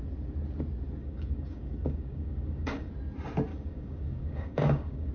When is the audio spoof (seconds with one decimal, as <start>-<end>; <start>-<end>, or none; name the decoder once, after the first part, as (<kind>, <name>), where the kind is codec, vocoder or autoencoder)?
1.0-2.9 (codec, DAC); 3.5-5.1

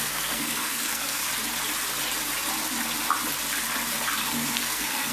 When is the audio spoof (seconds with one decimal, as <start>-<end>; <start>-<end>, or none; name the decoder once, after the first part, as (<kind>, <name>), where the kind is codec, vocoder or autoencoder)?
0.0-1.2 (codec, SNAC); 4.3-5.1

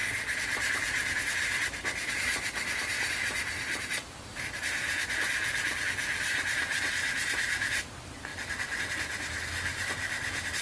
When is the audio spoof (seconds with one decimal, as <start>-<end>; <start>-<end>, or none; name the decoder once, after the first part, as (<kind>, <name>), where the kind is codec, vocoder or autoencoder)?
4.3-5.0 (vocoder, BigVGAN v2); 9.7-10.2